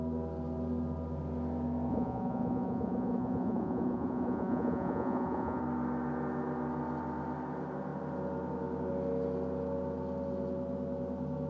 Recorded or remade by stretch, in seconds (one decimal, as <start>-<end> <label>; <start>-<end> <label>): 0.0-1.9 recorded; 1.9-5.6 remade; 5.6-11.5 recorded